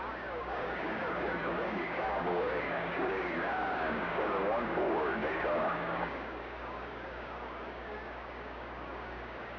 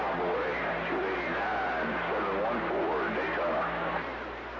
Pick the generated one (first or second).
first